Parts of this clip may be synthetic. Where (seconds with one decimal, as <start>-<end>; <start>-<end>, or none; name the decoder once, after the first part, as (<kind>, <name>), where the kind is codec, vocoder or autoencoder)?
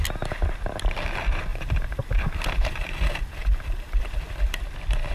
1.5-4.6 (vocoder, BigVGAN v2)